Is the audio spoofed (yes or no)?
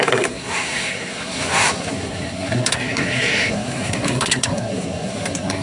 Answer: yes